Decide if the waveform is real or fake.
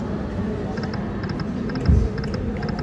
real